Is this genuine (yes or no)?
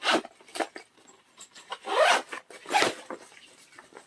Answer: no